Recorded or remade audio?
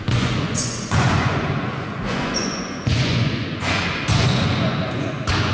remade